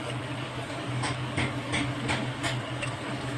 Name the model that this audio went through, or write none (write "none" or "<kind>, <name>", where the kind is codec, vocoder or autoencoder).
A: codec, DAC